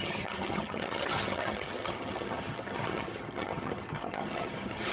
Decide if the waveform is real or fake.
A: fake